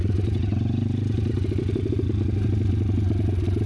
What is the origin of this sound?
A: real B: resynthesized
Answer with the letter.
A